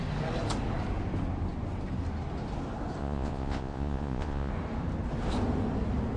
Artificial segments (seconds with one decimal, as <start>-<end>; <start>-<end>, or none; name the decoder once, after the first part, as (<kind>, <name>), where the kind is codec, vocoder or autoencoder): 3.0-4.5 (vocoder, Vocos)